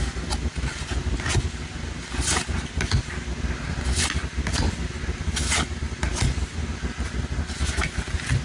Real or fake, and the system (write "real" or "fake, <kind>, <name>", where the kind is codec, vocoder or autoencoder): real